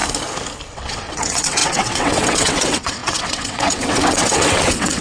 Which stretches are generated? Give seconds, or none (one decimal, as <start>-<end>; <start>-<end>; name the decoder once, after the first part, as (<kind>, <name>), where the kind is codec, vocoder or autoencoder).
0.7-5.0 (vocoder, WaveNeXt)